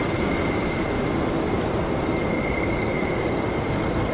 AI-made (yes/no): no